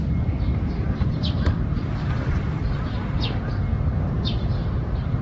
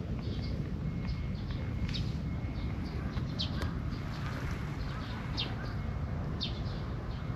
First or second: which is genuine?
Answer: second